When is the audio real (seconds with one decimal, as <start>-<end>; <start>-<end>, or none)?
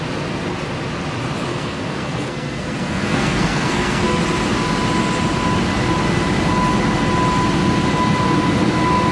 0.0-1.5; 4.2-9.1